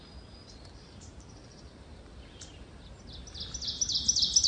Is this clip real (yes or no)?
yes